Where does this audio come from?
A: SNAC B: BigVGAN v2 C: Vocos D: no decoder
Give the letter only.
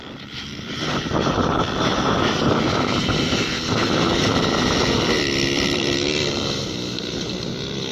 B